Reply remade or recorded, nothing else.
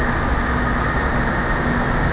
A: recorded